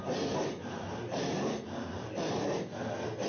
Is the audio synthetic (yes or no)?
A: no